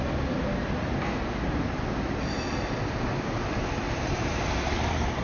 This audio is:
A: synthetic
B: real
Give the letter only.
B